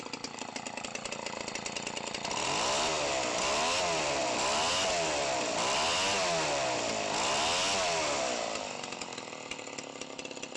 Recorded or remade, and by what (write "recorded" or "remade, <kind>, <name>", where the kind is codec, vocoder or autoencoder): recorded